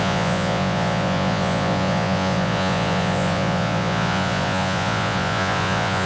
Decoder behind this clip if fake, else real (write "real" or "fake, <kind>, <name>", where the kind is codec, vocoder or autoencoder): fake, vocoder, Vocos